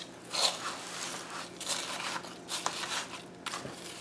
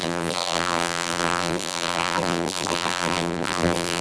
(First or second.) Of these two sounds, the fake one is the second